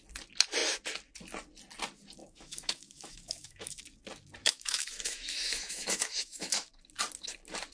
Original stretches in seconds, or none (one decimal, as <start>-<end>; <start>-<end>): 0.0-2.2; 3.8-4.4; 6.7-7.7